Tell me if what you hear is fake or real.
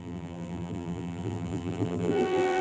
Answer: fake